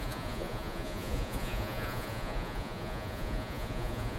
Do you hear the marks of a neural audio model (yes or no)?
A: yes